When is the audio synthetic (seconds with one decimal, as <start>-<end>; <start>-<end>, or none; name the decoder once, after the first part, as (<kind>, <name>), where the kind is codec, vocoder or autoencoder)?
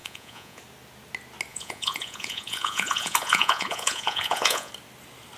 0.0-0.6 (vocoder, Vocos); 1.5-4.7